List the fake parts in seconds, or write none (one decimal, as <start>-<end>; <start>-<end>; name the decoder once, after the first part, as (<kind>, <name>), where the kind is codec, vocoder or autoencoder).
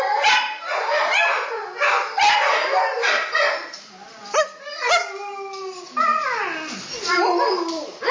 none